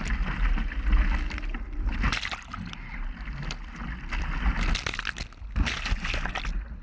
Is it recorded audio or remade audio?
recorded